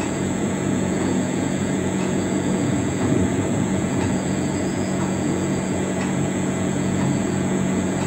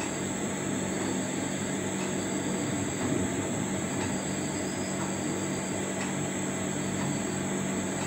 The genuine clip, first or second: second